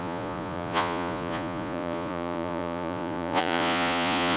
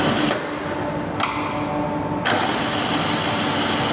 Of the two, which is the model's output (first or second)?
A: first